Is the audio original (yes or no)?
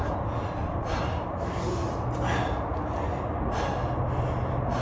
yes